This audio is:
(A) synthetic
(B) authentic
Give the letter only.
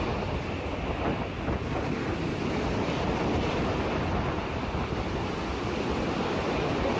B